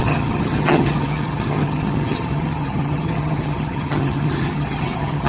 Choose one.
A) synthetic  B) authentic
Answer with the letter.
A